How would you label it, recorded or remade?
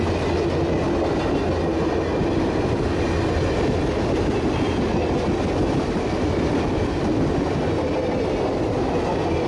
recorded